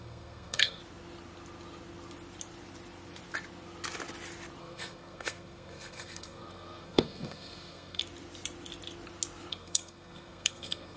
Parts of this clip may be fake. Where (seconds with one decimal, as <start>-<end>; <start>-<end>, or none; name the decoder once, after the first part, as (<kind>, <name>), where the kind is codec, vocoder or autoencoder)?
0.0-0.8 (codec, SNAC); 4.6-8.0; 9.5-11.0